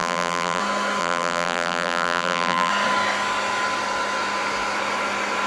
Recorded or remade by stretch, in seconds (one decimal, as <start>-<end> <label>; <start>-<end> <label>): 0.0-0.6 remade; 0.6-1.0 recorded; 1.0-2.7 remade; 2.7-5.5 recorded